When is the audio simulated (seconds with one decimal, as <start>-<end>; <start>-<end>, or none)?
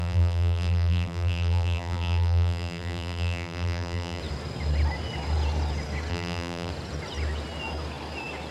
0.0-4.2; 6.1-6.7